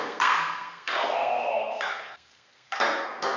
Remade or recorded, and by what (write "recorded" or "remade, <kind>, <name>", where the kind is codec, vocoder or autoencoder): remade, codec, SNAC